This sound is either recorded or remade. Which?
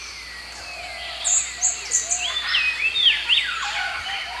recorded